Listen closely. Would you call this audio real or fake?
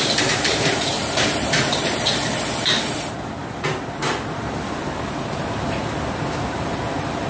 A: fake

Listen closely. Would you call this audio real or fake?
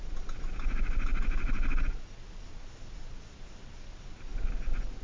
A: real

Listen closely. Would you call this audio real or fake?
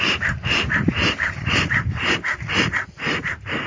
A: fake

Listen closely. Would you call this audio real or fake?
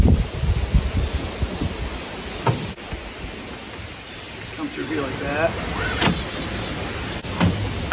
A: real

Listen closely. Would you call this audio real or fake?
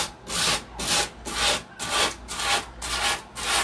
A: real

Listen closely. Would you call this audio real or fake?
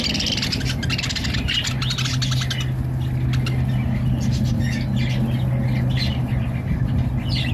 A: real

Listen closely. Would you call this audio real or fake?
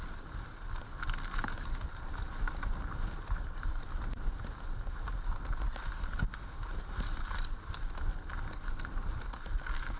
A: real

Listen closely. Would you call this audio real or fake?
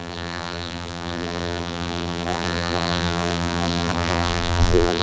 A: fake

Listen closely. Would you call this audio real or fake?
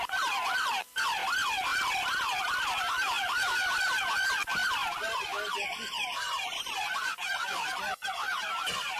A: fake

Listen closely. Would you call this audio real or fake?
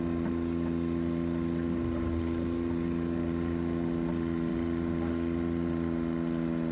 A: real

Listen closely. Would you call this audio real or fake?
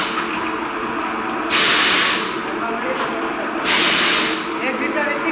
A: real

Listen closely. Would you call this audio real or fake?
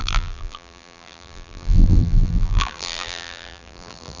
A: fake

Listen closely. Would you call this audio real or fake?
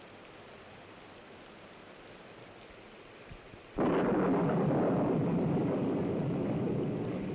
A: real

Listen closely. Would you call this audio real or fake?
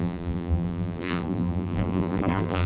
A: fake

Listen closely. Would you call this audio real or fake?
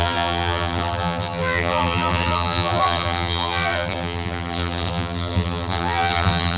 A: fake